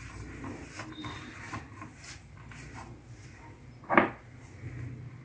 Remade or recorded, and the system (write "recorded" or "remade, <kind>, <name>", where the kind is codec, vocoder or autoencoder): recorded